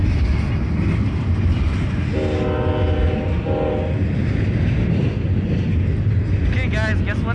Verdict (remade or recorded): recorded